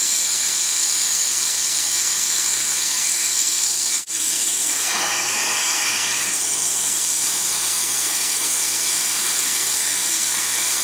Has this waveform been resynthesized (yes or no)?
yes